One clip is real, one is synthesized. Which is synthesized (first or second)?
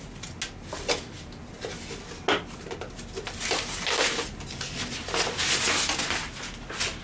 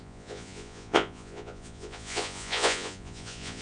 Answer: second